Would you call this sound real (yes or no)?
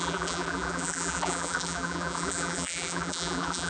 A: no